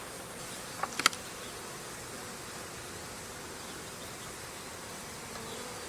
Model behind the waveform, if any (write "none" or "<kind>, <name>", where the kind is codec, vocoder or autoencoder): none